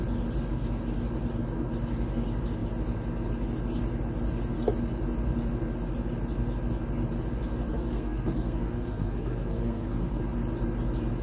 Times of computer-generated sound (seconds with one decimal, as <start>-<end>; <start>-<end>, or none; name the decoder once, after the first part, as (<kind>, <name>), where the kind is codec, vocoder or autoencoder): 7.7-10.3 (codec, SNAC)